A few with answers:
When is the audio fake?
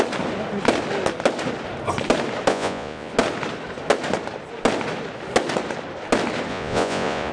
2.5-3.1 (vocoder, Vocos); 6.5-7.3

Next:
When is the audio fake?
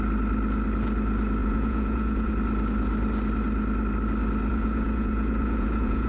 1.4-2.3 (vocoder, Vocos); 4.5-6.1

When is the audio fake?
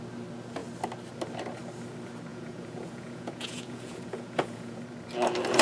2.3-4.8 (vocoder, Vocos)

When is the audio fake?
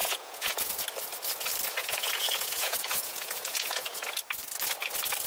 0.0-0.7 (vocoder, Vocos); 1.8-4.2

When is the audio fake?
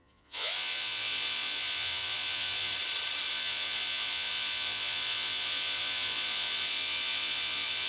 0.0-2.7 (vocoder, Vocos); 3.3-7.9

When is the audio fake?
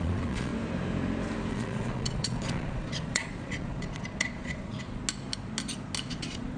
0.0-0.5 (vocoder, Vocos); 1.5-5.0; 6.1-6.6